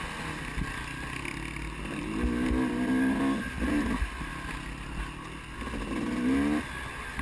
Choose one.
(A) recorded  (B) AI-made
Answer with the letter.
A